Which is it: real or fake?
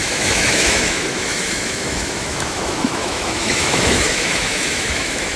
fake